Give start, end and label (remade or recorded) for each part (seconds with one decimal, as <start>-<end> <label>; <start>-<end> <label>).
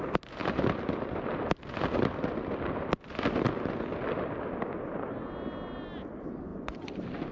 0.0-7.3 recorded